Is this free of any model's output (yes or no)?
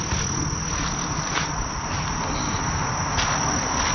yes